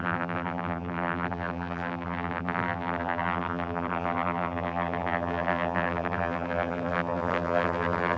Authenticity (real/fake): fake